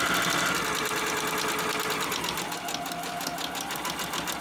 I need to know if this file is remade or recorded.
recorded